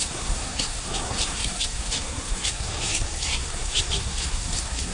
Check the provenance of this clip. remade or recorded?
remade